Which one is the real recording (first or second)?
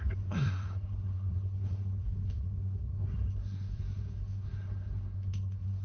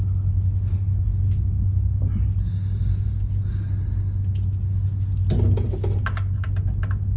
second